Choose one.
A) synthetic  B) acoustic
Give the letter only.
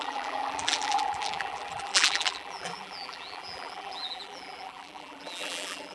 A